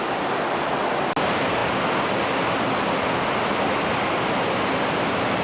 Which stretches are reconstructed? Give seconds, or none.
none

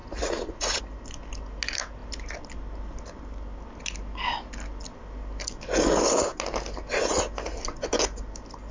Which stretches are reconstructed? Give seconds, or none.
0.0-0.8 (vocoder, Vocos)

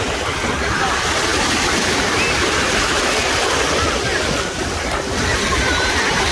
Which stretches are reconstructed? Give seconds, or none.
5.3-6.3 (vocoder, BigVGAN v2)

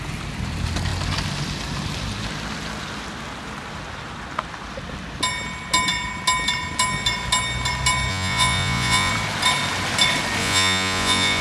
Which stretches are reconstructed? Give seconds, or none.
8.1-9.1 (vocoder, Vocos); 10.4-11.4

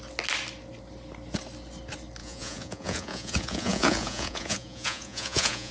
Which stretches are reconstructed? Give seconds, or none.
2.2-5.7 (vocoder, Vocos)

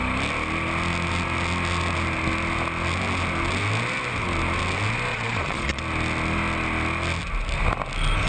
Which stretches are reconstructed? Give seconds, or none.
5.1-5.8 (vocoder, Vocos)

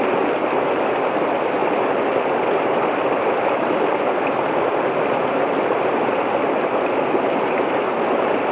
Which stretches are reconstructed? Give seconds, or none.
none